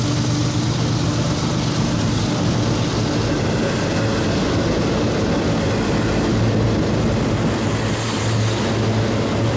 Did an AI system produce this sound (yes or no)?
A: no